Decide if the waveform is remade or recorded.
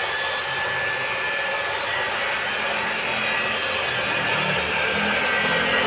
recorded